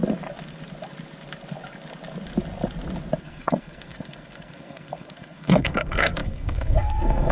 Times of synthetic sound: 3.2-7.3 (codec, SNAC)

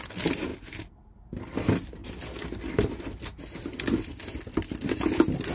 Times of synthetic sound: none

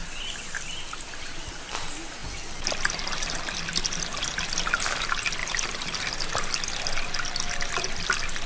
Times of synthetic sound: 5.4-6.1 (vocoder, BigVGAN v2)